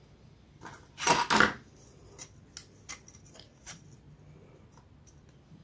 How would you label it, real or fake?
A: real